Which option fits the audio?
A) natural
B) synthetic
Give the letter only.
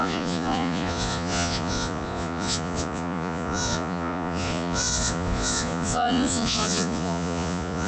B